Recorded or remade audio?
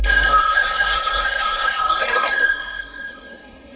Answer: remade